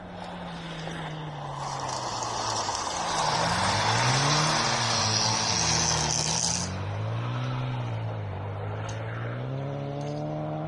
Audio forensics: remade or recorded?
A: recorded